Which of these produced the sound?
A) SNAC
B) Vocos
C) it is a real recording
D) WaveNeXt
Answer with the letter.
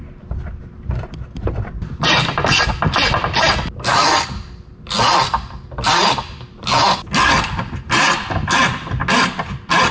C